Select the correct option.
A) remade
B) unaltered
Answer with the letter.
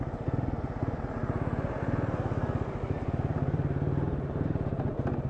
B